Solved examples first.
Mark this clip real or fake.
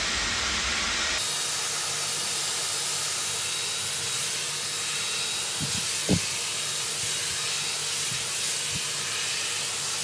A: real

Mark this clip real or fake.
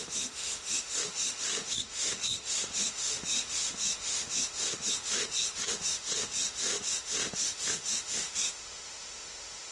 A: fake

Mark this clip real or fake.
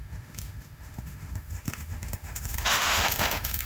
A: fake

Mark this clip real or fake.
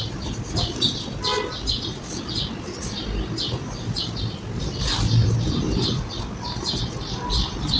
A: real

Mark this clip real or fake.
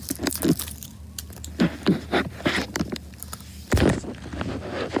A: real